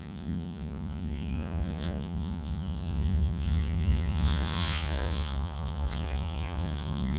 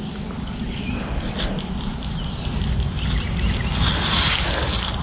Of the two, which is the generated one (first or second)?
first